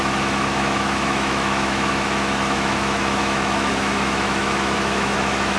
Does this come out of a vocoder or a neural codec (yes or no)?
yes